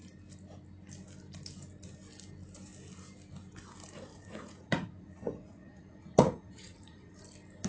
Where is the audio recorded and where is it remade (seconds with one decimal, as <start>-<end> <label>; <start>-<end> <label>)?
0.0-4.1 recorded; 4.1-7.2 remade; 7.2-7.7 recorded